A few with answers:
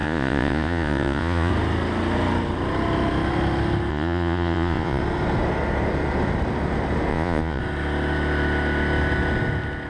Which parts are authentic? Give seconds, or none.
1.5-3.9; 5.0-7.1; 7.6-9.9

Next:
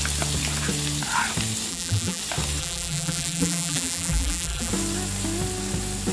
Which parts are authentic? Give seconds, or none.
0.0-1.7; 2.2-2.6; 4.7-6.1

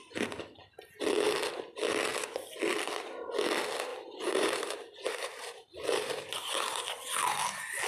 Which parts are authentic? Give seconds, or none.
0.0-3.9; 6.8-7.9

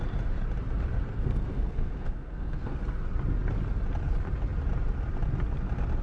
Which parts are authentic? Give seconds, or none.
0.0-1.1; 2.8-6.0

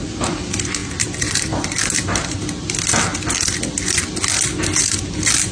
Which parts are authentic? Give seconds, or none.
0.0-0.8; 2.3-5.5

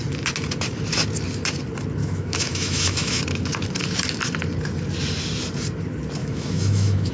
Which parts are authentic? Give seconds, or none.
0.0-2.0; 3.2-6.2

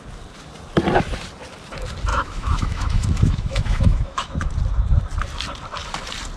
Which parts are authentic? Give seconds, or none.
0.0-2.1; 4.5-6.4

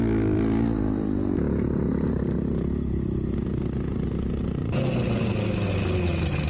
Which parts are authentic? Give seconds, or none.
0.0-3.5; 4.1-6.5